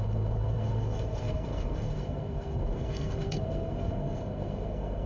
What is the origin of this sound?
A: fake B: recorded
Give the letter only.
A